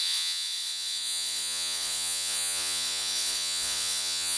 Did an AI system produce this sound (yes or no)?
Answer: yes